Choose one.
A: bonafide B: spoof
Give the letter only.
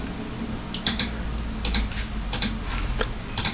A